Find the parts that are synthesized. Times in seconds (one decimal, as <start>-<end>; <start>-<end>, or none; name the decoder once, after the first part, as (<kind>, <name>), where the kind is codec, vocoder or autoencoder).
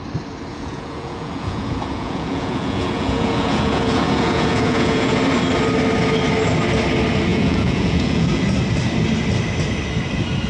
0.5-5.2 (vocoder, Vocos); 7.3-8.4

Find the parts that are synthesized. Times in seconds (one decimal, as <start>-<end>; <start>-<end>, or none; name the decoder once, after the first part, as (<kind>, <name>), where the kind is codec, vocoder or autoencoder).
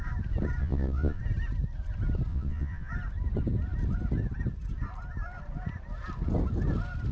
0.6-1.2 (vocoder, Vocos); 2.3-2.9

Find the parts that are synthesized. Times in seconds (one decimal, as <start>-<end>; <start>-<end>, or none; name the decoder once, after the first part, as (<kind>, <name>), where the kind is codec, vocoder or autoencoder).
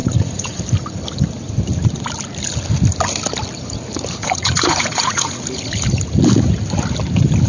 0.0-0.6 (vocoder, Vocos); 4.2-5.4